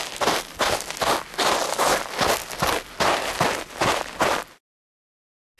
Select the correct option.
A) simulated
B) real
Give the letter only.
B